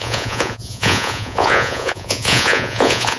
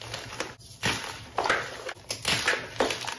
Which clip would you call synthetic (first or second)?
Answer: first